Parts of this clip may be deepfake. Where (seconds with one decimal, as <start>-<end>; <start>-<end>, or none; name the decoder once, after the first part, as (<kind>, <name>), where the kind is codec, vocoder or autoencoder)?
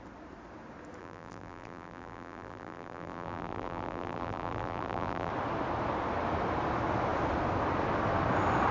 1.0-5.3 (vocoder, BigVGAN v2)